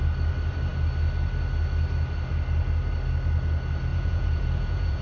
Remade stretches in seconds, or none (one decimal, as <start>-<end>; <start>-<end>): 3.9-5.0